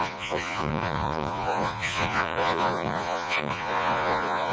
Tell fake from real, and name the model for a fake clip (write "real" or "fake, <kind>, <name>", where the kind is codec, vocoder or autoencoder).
fake, vocoder, Vocos